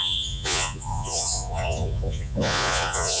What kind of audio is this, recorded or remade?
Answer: remade